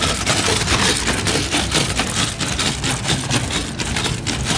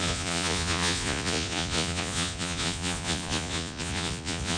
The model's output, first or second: second